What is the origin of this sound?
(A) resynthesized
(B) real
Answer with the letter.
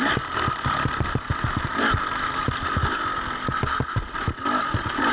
B